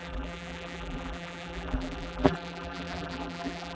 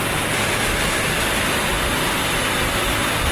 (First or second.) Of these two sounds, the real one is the second